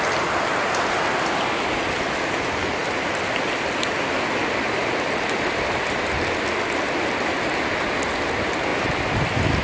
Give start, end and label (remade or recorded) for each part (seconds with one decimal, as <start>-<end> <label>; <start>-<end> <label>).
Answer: 0.0-9.6 recorded